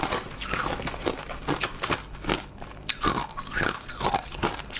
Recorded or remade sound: recorded